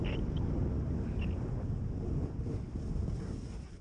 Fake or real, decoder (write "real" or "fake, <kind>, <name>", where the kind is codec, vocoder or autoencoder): real